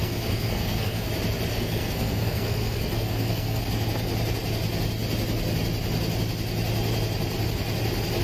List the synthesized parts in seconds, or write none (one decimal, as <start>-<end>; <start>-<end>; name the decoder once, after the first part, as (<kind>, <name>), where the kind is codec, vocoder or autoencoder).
0.0-1.1 (codec, SNAC); 1.5-3.6